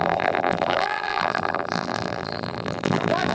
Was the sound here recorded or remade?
remade